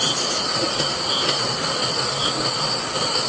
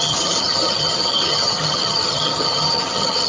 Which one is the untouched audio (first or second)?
first